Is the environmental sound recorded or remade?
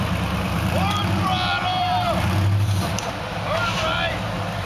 remade